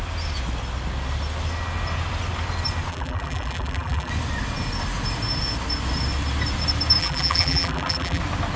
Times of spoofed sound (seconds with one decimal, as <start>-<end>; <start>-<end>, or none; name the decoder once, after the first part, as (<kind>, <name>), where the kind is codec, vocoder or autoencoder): 2.9-4.1 (vocoder, BigVGAN v2); 7.0-8.2